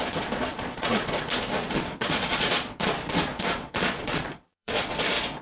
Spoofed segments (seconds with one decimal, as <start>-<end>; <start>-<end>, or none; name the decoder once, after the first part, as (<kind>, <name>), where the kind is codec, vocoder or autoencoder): 0.5-1.0 (vocoder, Vocos); 1.6-2.9; 3.3-4.9